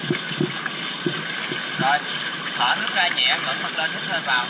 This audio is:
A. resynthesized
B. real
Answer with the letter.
B